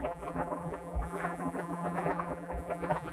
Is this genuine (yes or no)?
no